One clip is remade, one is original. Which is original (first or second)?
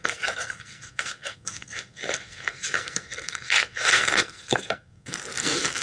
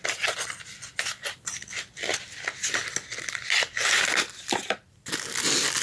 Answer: second